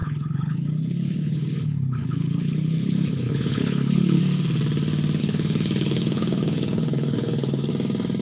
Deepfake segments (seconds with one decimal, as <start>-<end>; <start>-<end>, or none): 0.0-4.2; 5.2-7.7